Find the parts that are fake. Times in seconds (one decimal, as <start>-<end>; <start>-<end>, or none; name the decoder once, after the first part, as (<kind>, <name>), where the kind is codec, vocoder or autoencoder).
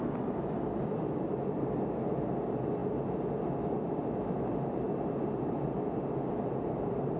none